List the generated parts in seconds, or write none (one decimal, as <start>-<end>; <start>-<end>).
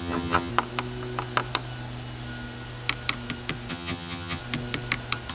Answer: 0.0-0.5; 3.7-4.4